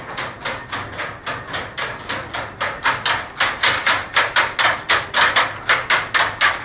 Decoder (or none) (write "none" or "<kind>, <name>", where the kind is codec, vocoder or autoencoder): none